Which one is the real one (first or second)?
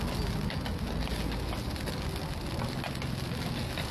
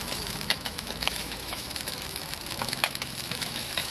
first